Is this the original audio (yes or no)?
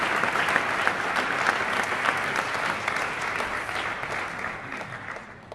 yes